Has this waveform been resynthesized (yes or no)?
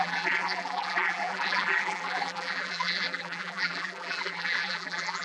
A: yes